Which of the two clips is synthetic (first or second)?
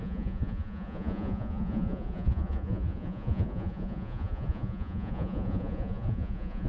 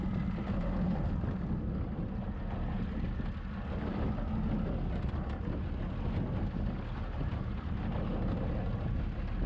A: first